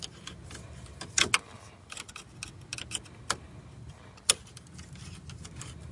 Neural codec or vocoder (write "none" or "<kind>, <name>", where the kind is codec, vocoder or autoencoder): none